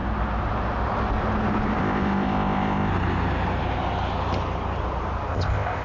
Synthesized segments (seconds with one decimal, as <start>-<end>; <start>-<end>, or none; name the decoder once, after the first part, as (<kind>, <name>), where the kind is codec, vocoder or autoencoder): 1.8-2.9 (codec, ZipCodec); 5.3-5.8